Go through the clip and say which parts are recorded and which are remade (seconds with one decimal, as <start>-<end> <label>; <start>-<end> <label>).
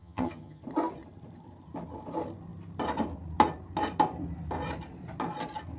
0.0-0.6 remade; 0.6-5.8 recorded